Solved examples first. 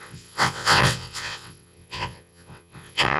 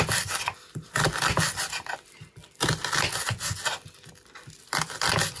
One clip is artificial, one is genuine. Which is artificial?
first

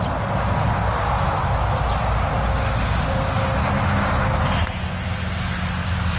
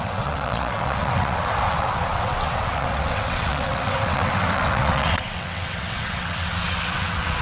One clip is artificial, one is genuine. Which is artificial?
second